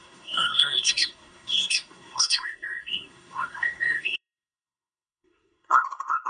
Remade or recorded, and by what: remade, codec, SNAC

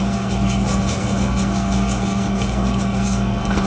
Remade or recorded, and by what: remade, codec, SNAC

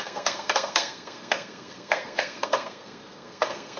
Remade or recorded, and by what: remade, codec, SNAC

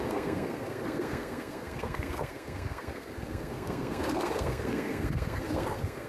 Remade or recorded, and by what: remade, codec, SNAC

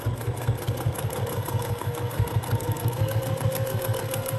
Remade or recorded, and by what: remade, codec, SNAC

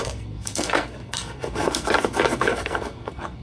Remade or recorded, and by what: remade, codec, SNAC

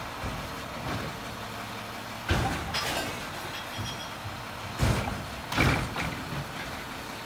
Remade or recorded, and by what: recorded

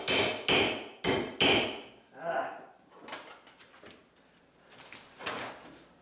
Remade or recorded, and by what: recorded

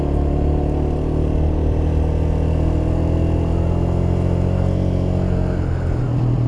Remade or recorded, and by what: recorded